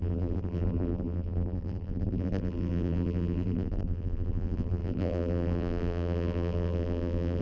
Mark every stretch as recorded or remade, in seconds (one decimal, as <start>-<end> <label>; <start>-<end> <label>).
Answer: 0.0-7.4 remade